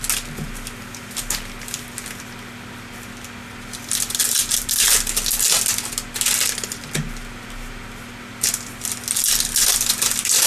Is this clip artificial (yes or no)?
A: no